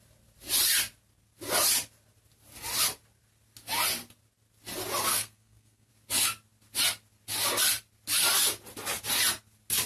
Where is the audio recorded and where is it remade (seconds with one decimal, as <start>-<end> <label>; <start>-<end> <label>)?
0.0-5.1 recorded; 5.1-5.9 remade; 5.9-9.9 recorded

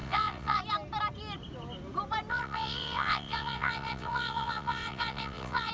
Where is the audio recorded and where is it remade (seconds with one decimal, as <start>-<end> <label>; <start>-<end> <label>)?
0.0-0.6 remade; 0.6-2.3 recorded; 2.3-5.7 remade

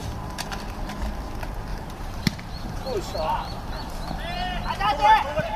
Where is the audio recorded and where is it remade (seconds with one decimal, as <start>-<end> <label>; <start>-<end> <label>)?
0.0-1.1 remade; 1.1-1.7 recorded; 1.7-4.8 remade; 4.8-5.6 recorded

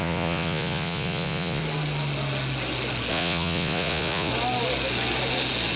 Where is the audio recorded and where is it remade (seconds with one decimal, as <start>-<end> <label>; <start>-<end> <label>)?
0.0-1.6 remade; 1.6-3.1 recorded; 3.1-4.3 remade; 4.3-5.8 recorded

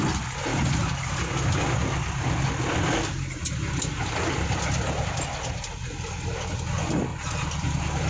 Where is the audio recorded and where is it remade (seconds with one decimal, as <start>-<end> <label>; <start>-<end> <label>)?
0.0-7.1 recorded; 7.1-8.1 remade

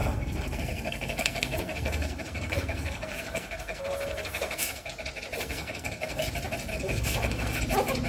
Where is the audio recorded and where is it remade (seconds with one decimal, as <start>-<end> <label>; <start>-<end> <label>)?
0.0-4.9 remade; 4.9-5.4 recorded; 5.4-6.3 remade; 6.3-6.7 recorded; 6.7-7.6 remade; 7.6-8.1 recorded

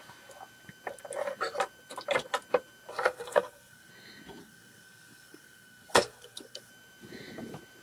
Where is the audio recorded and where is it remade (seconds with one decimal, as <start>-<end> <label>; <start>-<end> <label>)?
0.0-2.9 recorded; 2.9-3.9 remade; 3.9-4.4 recorded; 4.4-6.7 remade; 6.7-7.8 recorded